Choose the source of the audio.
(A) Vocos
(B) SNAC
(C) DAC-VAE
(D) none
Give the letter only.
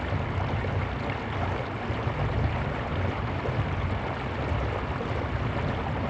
D